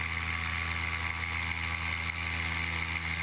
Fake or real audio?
real